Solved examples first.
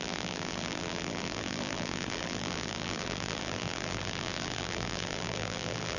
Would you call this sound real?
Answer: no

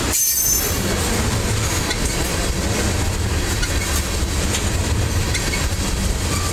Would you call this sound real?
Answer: yes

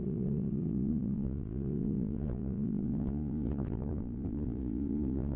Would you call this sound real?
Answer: no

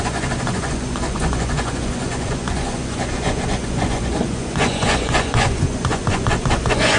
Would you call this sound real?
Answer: no